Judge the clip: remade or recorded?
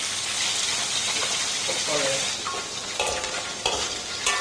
recorded